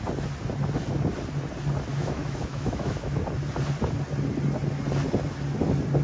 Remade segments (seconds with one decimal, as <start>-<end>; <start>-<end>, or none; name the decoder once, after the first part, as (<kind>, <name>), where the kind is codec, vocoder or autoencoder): 1.9-3.2 (autoencoder, DAC-VAE)